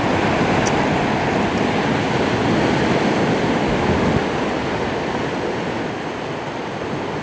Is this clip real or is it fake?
real